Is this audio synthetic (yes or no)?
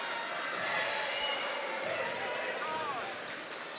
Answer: no